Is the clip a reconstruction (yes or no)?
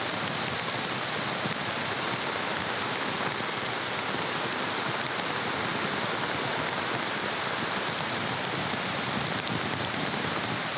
no